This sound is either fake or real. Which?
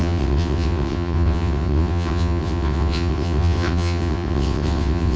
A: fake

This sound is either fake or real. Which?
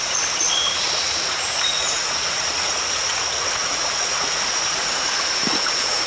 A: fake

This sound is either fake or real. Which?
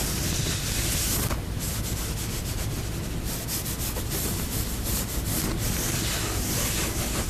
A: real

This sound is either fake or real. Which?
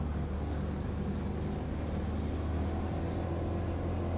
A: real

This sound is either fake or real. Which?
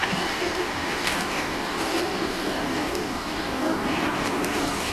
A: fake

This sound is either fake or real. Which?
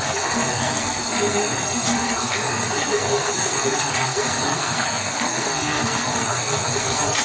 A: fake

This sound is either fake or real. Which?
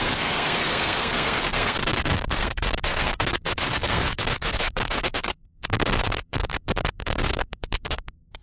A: fake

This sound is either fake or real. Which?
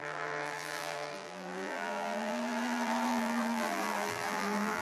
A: fake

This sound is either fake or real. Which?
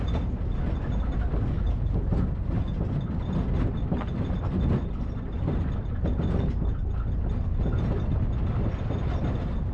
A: real